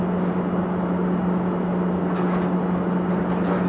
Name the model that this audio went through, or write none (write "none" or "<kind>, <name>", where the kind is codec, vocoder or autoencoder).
none